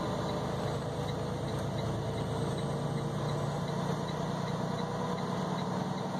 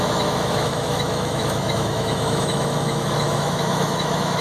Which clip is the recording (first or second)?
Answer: first